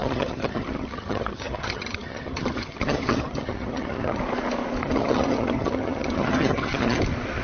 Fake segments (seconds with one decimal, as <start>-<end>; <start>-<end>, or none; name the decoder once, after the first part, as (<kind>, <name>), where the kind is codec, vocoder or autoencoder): 0.0-4.2 (vocoder, HiFi-GAN); 4.8-7.0